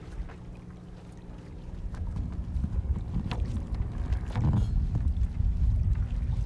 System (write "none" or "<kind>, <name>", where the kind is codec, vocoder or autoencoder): none